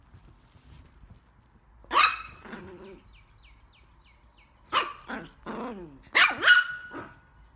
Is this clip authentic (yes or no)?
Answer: yes